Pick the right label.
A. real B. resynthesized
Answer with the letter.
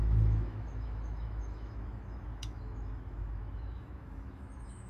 B